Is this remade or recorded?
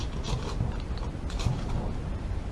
recorded